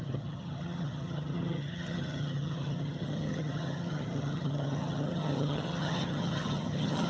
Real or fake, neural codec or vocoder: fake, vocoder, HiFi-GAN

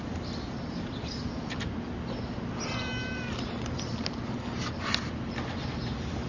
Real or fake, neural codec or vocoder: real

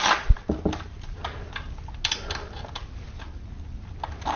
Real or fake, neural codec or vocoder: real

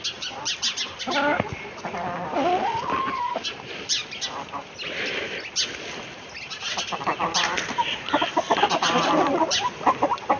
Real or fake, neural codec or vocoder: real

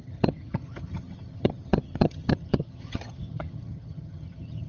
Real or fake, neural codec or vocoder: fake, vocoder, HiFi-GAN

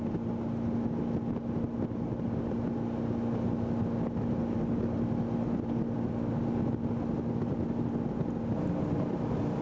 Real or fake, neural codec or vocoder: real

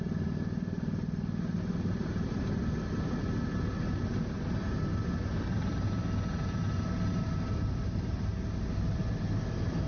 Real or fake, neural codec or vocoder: real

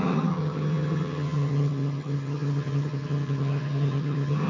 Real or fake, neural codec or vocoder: fake, vocoder, HiFi-GAN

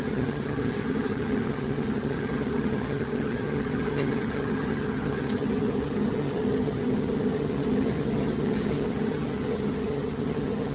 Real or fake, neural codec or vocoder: fake, vocoder, HiFi-GAN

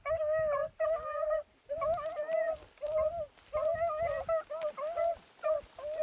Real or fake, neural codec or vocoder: real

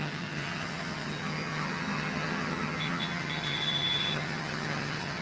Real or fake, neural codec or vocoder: fake, vocoder, HiFi-GAN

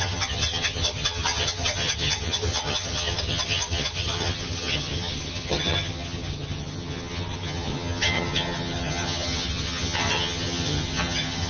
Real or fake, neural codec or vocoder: fake, vocoder, HiFi-GAN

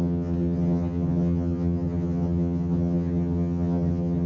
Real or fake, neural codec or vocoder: fake, vocoder, HiFi-GAN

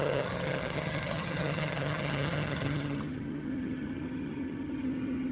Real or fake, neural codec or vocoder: fake, vocoder, HiFi-GAN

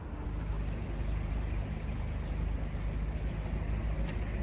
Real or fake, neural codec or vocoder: real